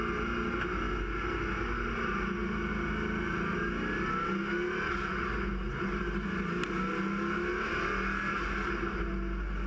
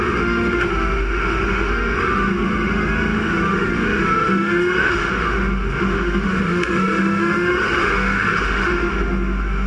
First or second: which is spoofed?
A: second